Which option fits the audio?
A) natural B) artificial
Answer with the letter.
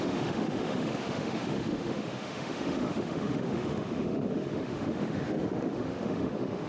B